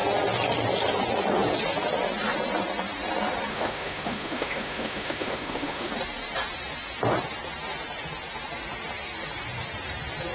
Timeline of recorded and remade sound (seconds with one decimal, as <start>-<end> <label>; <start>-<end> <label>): 0.0-3.5 recorded; 3.5-5.9 remade; 5.9-10.3 recorded